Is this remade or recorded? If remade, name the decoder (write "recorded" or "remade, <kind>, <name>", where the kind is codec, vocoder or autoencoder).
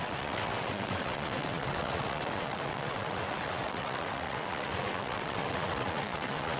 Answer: remade, vocoder, WaveNeXt